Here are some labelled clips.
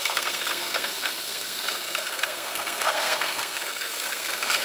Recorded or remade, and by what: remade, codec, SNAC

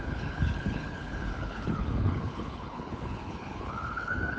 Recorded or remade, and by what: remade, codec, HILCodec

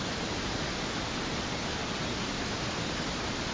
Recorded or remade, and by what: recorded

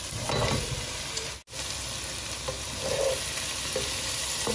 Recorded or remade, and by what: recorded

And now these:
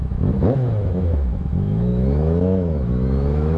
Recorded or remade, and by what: remade, autoencoder, DAC-VAE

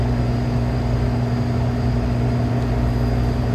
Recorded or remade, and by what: recorded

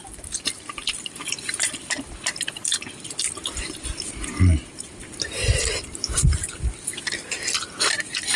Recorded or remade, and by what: remade, vocoder, BigVGAN v2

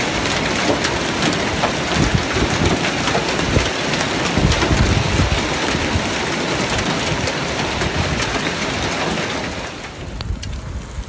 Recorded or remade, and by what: recorded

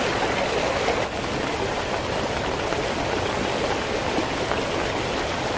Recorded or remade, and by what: recorded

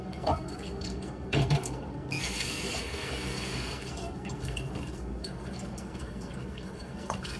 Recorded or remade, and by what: remade, codec, SNAC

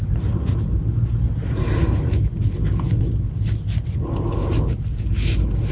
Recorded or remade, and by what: recorded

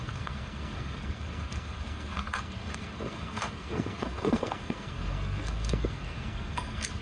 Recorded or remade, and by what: remade, codec, SNAC